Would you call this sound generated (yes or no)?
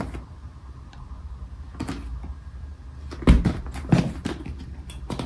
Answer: no